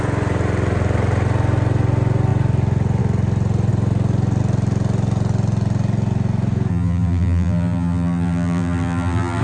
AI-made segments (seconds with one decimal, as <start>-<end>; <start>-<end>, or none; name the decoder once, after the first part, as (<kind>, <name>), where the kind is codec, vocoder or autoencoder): 6.7-9.4 (vocoder, BigVGAN v2)